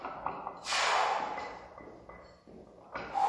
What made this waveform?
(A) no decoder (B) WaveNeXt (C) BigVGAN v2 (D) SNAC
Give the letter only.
A